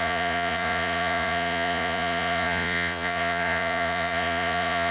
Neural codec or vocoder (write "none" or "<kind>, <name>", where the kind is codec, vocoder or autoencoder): vocoder, Vocos